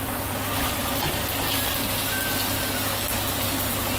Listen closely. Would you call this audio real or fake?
real